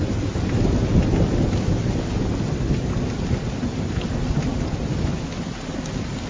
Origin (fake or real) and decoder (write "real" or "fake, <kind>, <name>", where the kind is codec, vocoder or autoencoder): real